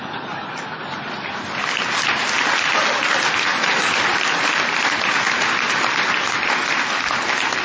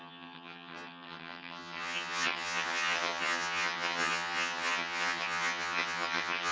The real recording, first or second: first